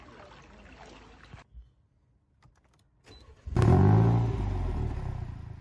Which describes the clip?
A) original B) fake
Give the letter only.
A